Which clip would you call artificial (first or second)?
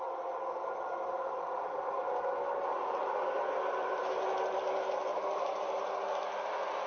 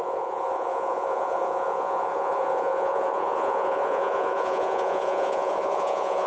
second